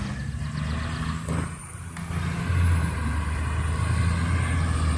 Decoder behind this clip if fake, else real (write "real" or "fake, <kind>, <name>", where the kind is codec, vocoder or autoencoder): real